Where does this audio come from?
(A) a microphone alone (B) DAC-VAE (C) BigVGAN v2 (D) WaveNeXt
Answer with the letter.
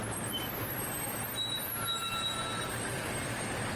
A